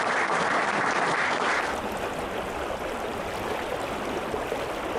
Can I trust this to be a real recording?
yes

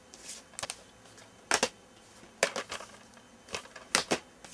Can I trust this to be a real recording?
yes